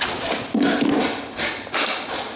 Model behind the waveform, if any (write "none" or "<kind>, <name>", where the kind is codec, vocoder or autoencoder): none